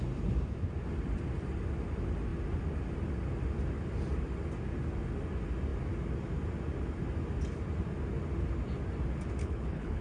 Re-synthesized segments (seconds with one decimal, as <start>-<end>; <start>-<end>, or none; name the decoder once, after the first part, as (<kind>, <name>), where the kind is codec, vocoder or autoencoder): 9.4-10.0 (codec, HILCodec)